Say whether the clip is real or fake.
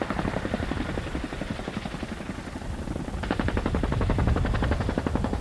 real